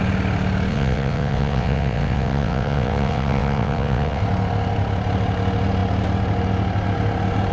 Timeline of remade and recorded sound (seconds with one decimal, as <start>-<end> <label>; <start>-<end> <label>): 0.0-0.7 recorded; 0.7-4.2 remade; 4.2-7.5 recorded